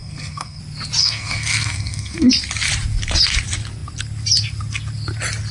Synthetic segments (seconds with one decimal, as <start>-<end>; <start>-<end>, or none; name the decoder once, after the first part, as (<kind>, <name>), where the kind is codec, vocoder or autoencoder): 0.0-0.6 (codec, SNAC); 1.0-2.3